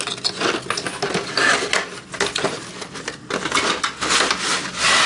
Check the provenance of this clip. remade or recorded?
recorded